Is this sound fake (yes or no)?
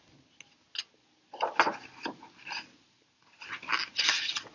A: no